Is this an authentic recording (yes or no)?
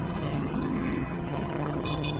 no